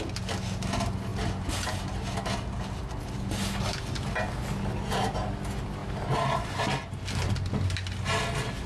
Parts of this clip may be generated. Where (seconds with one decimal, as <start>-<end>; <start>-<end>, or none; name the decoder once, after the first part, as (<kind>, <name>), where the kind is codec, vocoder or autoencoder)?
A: none